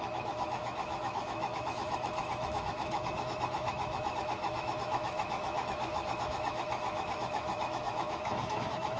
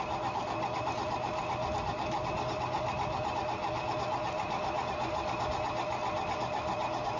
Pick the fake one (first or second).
first